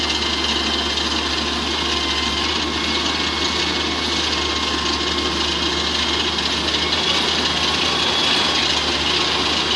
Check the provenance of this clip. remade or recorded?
recorded